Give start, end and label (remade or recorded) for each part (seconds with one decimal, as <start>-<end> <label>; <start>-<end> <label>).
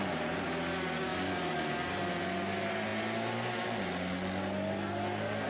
0.0-5.5 recorded